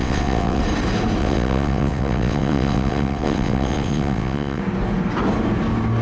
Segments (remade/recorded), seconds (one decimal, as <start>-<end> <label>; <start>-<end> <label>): 0.0-0.6 remade; 0.6-1.2 recorded; 1.2-4.6 remade; 4.6-6.0 recorded